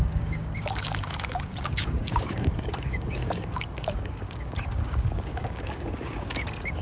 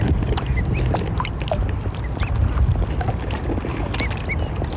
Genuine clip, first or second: second